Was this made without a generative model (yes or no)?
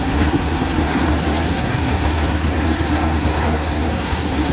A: no